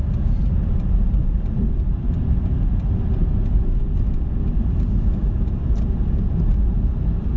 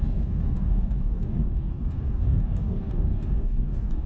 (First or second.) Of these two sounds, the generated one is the second